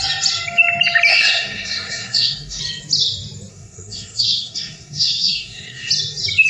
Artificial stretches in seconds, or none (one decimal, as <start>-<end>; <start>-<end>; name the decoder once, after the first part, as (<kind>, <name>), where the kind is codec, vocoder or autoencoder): 1.1-2.6 (codec, SNAC); 3.5-5.9

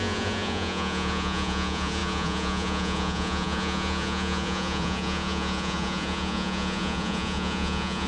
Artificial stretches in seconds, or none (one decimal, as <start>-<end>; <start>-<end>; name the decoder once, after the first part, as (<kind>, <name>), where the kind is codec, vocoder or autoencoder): 0.0-8.1 (vocoder, Vocos)

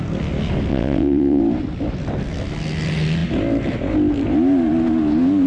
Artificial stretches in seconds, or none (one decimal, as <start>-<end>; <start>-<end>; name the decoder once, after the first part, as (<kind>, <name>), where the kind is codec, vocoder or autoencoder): 0.7-1.4 (vocoder, WaveNeXt)

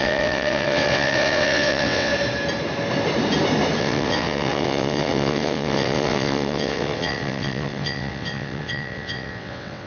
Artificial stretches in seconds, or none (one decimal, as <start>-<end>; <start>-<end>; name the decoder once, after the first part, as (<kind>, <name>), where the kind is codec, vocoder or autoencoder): 0.0-2.1 (vocoder, WaveNeXt); 3.8-9.9

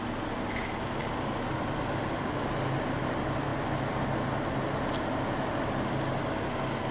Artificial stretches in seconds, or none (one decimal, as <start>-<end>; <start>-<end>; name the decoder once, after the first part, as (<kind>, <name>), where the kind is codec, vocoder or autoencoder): 1.0-2.3 (vocoder, BigVGAN v2)

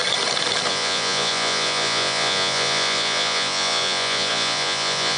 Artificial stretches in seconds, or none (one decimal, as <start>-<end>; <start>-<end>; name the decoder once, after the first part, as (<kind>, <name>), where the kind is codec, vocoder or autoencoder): 0.7-5.2 (vocoder, Vocos)

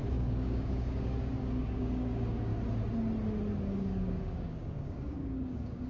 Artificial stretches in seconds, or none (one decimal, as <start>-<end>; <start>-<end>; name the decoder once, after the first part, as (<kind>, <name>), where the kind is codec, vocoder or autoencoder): 0.0-2.5 (codec, DAC); 3.6-5.9

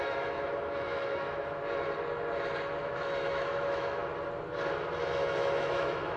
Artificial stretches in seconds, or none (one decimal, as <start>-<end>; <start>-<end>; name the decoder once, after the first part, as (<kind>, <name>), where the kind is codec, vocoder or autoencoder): 0.0-1.6 (autoencoder, DAC-VAE); 2.8-4.0; 5.0-6.2